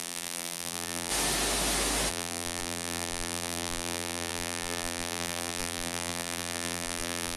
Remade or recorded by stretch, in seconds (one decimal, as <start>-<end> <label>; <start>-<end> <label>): 0.0-1.1 remade; 1.1-2.1 recorded; 2.1-7.4 remade